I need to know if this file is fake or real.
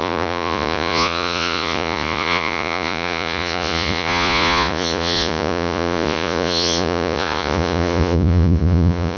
fake